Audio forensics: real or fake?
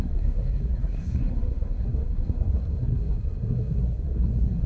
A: fake